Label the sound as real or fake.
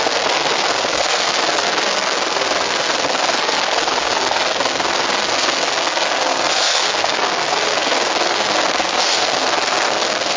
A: fake